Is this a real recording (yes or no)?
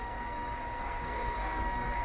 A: no